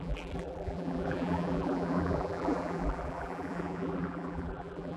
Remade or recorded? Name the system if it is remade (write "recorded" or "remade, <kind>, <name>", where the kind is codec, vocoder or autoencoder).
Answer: remade, vocoder, BigVGAN v2